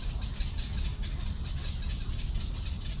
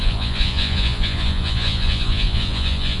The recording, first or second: first